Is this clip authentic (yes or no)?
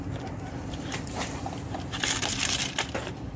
no